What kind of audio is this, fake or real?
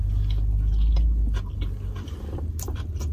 real